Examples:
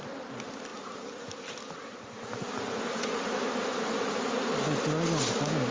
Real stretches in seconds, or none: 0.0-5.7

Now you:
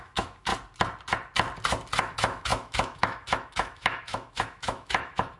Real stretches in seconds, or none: 0.5-2.0